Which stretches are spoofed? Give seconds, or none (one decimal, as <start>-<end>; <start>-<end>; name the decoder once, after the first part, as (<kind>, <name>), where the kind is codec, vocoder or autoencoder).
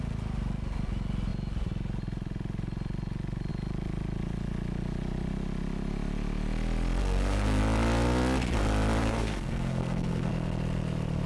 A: 7.0-7.6 (codec, SNAC); 9.0-10.3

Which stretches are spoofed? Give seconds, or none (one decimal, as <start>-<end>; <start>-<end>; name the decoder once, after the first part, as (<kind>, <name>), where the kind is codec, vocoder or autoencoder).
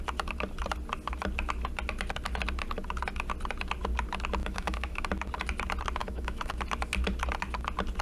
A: 4.4-5.0 (autoencoder, DAC-VAE); 6.0-6.5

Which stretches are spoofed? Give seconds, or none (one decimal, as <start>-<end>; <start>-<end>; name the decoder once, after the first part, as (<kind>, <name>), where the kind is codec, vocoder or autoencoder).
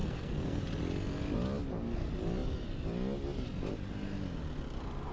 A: 0.0-0.6 (codec, SNAC)